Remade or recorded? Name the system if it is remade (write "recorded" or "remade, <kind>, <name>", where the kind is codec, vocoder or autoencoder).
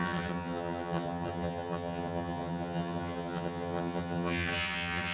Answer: remade, vocoder, HiFi-GAN